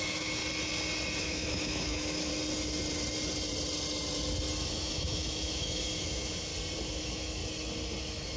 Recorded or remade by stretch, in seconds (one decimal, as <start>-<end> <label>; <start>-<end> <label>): 0.0-0.4 remade; 0.4-1.2 recorded; 1.2-2.3 remade; 2.3-4.7 recorded; 4.7-6.5 remade; 6.5-7.0 recorded; 7.0-7.4 remade; 7.4-8.0 recorded; 8.0-8.4 remade